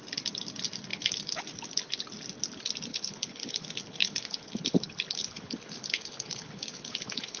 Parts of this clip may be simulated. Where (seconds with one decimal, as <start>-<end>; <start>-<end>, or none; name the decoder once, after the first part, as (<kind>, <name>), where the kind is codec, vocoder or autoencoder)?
0.9-1.4 (codec, HILCodec); 2.9-7.4